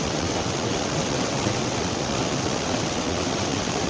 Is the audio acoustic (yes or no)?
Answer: no